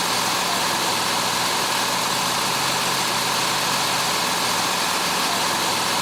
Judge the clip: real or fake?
real